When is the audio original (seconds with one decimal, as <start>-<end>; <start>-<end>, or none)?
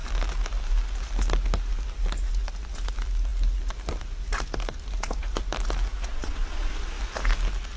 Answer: 0.0-6.1; 7.0-7.8